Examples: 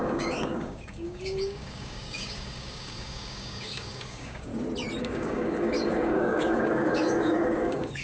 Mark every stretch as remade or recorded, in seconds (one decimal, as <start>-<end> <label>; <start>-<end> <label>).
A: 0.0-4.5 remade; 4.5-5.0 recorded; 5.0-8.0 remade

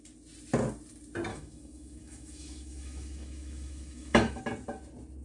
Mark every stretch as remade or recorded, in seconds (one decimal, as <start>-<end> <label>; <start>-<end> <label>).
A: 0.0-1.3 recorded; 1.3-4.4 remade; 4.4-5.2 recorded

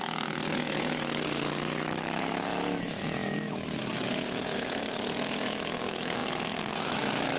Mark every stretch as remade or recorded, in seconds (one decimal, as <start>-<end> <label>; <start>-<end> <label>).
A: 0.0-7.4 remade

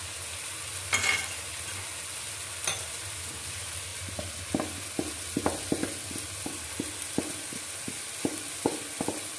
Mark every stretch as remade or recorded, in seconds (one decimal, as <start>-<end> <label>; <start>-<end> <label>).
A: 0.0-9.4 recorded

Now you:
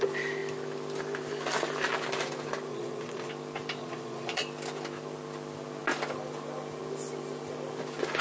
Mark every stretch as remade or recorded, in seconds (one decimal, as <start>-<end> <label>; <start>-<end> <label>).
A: 0.0-2.7 recorded; 2.7-3.3 remade; 3.3-3.8 recorded; 3.8-4.4 remade; 4.4-8.2 recorded

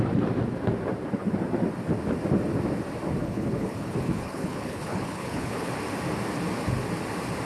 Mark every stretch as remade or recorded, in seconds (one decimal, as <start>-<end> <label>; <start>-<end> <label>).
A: 0.0-3.2 recorded; 3.2-5.7 remade; 5.7-7.5 recorded

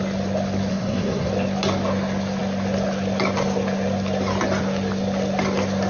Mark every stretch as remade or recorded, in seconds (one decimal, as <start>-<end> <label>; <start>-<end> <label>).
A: 0.0-0.7 recorded; 0.7-1.3 remade; 1.3-5.9 recorded